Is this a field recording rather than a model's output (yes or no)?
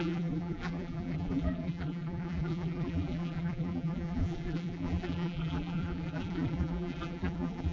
no